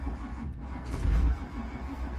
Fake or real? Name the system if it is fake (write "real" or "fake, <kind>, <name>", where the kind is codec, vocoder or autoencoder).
fake, codec, SNAC